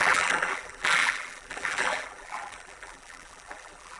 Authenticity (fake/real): fake